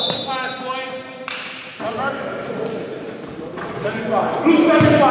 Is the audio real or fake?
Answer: real